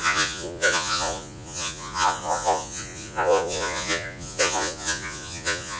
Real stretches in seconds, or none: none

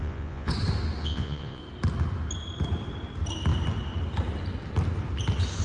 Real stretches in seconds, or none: 0.5-1.0; 1.6-5.6

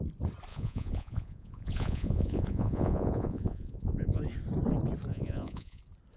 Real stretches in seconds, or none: 0.0-0.5; 4.2-5.1; 5.8-6.2

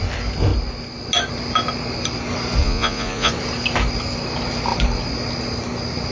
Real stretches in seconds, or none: 0.0-2.6; 3.3-6.1

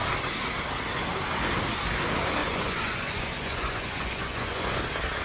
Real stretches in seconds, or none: 0.0-2.4; 4.8-5.2

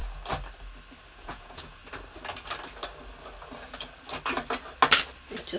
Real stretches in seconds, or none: 0.0-1.1; 1.8-5.6

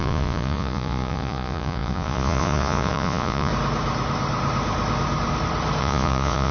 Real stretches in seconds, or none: 3.5-5.8